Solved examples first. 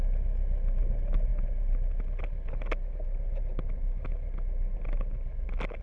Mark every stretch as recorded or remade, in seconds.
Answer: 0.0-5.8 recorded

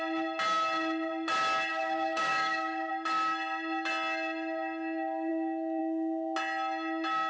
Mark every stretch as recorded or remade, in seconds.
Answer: 0.0-1.7 recorded; 1.7-2.9 remade; 2.9-7.3 recorded

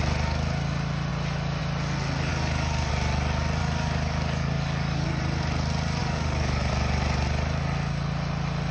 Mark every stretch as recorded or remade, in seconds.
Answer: 0.0-2.3 recorded; 2.3-2.9 remade; 2.9-3.6 recorded; 3.6-5.2 remade; 5.2-6.0 recorded; 6.0-6.7 remade; 6.7-8.7 recorded

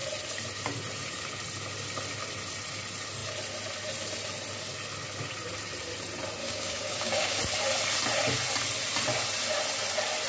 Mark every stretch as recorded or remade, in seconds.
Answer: 0.0-6.4 recorded; 6.4-7.4 remade; 7.4-10.3 recorded

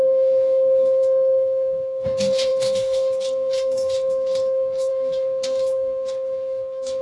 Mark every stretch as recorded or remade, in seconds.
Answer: 0.0-7.0 remade

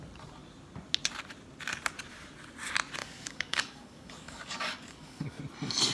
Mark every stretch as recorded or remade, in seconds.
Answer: 0.0-3.0 recorded; 3.0-5.4 remade; 5.4-5.9 recorded

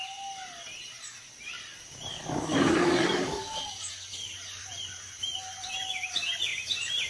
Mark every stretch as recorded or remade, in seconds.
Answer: 0.0-2.1 recorded; 2.1-3.9 remade; 3.9-7.1 recorded

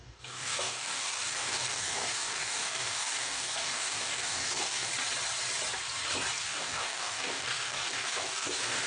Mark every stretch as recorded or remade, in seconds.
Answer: 0.0-4.9 remade; 4.9-6.4 recorded; 6.4-8.9 remade